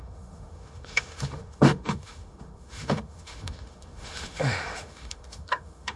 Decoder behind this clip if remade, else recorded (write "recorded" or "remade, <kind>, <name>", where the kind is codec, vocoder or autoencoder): remade, autoencoder, DAC-VAE